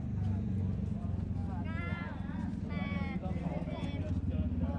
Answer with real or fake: real